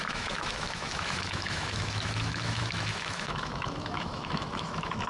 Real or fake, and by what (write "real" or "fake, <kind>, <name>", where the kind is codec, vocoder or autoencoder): fake, autoencoder, DAC-VAE